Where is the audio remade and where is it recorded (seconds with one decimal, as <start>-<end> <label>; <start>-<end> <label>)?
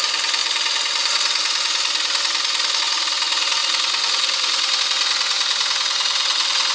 0.0-6.7 recorded